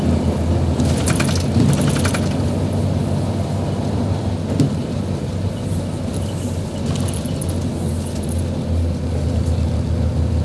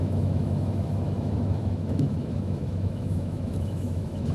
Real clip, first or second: first